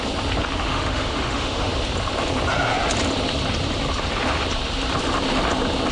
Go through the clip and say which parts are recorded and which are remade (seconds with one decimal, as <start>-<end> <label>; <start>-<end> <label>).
0.0-0.6 recorded; 0.6-1.7 remade; 1.7-5.9 recorded